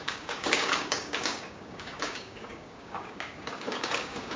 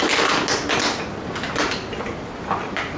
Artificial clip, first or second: first